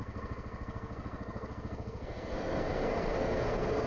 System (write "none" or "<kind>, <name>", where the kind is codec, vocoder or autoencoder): codec, SNAC